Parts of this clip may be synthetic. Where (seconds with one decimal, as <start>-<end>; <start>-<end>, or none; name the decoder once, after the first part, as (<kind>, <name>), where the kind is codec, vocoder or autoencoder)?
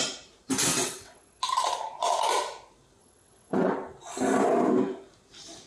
0.7-1.4 (vocoder, WaveNeXt); 3.0-3.7